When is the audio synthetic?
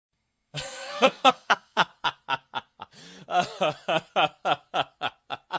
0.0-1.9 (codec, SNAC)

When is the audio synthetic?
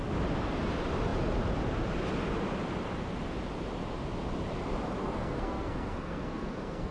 5.0-6.9 (codec, SNAC)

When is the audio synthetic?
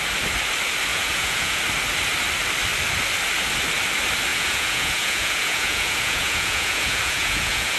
0.9-1.6 (vocoder, Vocos); 4.3-7.8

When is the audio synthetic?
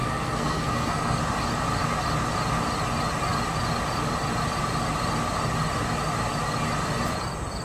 0.0-1.2 (codec, SNAC)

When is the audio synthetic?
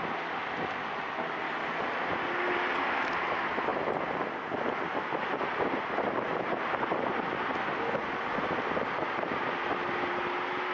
none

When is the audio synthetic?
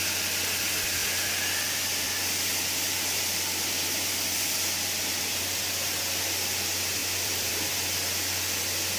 7.0-7.7 (vocoder, BigVGAN v2)